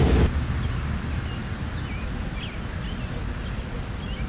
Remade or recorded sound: recorded